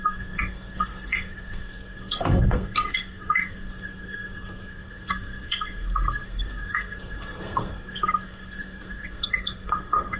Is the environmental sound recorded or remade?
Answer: remade